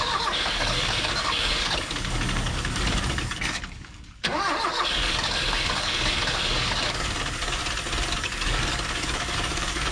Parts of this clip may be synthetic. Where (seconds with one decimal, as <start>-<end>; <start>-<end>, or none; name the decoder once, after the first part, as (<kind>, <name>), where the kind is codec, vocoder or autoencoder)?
0.0-7.6 (codec, DAC); 8.1-9.9